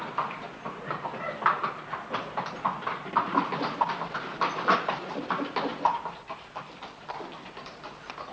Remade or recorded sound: recorded